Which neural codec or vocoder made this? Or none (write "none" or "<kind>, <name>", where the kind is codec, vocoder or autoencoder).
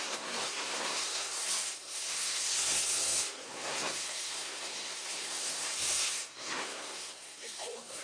codec, SNAC